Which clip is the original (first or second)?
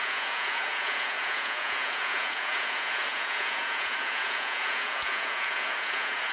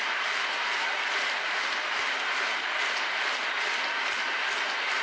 second